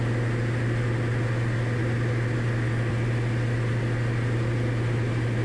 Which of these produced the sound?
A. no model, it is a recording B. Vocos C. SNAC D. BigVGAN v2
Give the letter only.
A